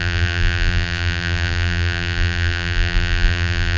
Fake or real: fake